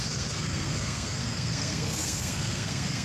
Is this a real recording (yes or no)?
no